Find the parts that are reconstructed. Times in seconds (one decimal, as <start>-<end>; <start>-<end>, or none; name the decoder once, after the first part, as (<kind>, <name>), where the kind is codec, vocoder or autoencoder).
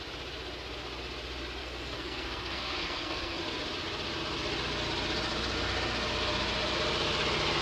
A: 1.6-3.4 (codec, SNAC)